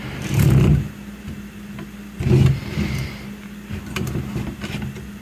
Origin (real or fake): real